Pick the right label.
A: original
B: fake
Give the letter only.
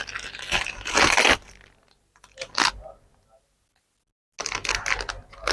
A